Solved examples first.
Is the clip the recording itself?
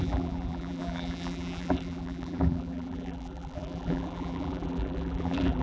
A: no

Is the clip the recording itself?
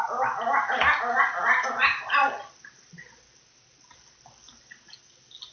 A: yes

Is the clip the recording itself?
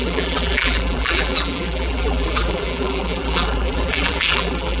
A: no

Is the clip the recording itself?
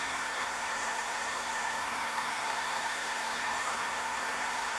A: no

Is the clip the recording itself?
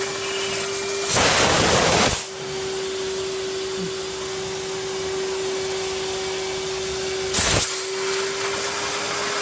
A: yes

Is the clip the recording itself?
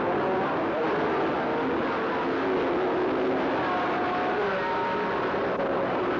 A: yes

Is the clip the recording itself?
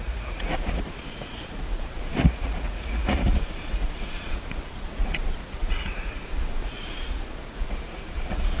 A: no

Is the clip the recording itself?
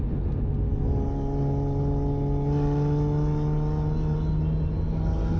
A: yes